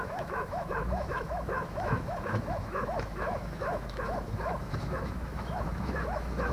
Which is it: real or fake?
fake